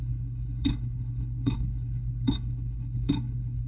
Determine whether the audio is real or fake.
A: fake